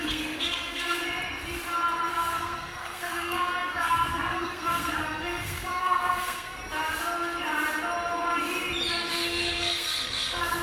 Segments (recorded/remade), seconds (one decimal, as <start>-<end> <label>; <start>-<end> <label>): 0.0-1.0 remade; 1.0-2.1 recorded; 2.1-6.6 remade; 6.6-9.1 recorded; 9.1-10.6 remade

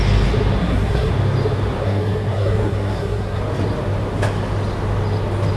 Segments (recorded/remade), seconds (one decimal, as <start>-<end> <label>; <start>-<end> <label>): 0.0-0.6 recorded; 0.6-1.1 remade; 1.1-1.8 recorded; 1.8-3.4 remade; 3.4-5.6 recorded

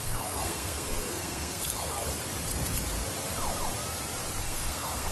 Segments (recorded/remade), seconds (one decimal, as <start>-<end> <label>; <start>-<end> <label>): 0.0-2.1 remade; 2.1-4.4 recorded; 4.4-5.1 remade

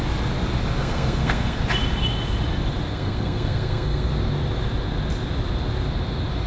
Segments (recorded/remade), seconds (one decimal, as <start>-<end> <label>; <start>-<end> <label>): 0.0-0.8 recorded; 0.8-1.6 remade; 1.6-2.9 recorded; 2.9-4.1 remade; 4.1-6.5 recorded

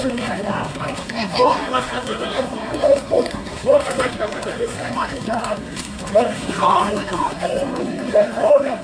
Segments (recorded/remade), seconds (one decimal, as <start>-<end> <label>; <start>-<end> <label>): 0.0-8.8 remade

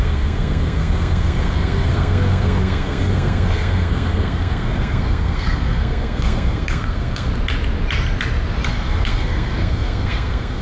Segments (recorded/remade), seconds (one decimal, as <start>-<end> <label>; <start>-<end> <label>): 0.0-7.3 remade; 7.3-8.7 recorded; 8.7-10.6 remade

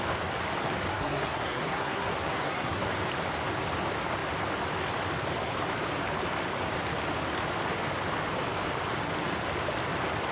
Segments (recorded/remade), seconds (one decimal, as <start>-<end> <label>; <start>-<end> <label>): 0.0-0.9 recorded; 0.9-2.9 remade; 2.9-10.3 recorded

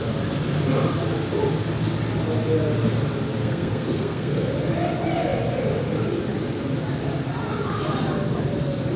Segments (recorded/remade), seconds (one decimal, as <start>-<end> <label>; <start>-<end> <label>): 0.0-3.4 recorded; 3.4-4.5 remade; 4.5-9.0 recorded